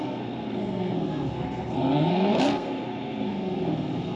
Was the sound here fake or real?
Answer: fake